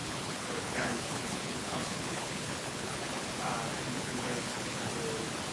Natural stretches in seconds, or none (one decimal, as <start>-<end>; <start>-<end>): 3.2-3.9; 4.9-5.5